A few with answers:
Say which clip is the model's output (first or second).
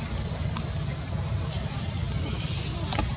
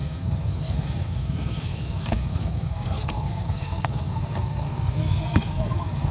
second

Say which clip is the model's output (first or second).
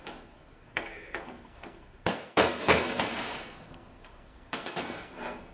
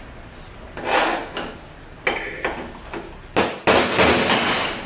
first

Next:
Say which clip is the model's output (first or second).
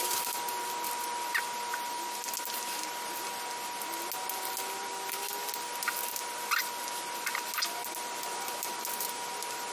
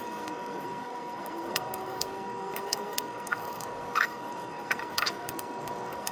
second